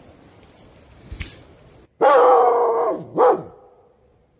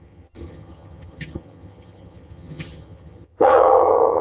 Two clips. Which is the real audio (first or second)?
first